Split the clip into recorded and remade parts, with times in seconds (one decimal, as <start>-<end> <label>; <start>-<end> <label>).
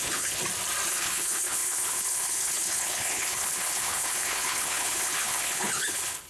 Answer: 0.0-0.4 remade; 0.4-0.9 recorded; 0.9-6.3 remade